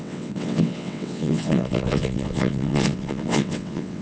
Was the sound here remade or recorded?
remade